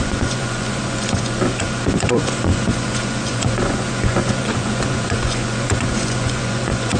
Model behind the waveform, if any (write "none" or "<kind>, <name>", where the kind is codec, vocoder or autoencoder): vocoder, Vocos